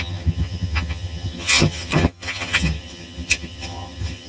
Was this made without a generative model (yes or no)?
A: no